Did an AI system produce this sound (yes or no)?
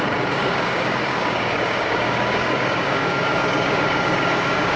yes